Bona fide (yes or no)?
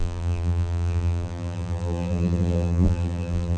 no